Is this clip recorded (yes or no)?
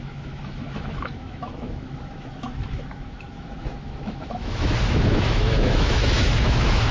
no